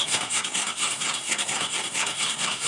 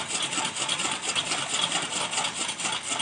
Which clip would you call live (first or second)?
second